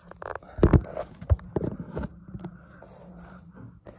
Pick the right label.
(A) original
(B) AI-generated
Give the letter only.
A